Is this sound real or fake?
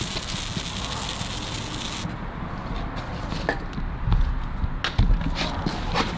real